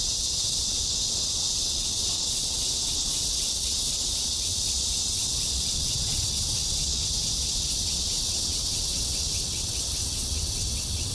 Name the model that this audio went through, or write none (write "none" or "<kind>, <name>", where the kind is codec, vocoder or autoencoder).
vocoder, WaveNeXt